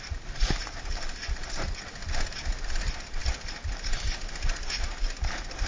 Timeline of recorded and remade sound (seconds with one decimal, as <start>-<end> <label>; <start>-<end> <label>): 0.0-5.7 recorded